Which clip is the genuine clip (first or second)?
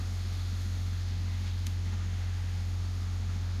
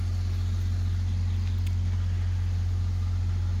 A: second